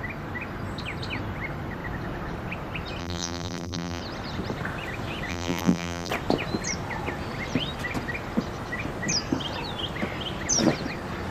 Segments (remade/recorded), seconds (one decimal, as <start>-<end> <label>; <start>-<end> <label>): 0.0-3.0 recorded; 3.0-4.0 remade; 4.0-5.3 recorded; 5.3-6.1 remade; 6.1-11.3 recorded